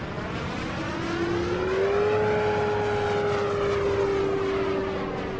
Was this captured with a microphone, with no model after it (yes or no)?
yes